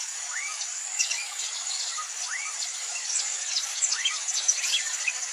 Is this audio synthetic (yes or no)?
yes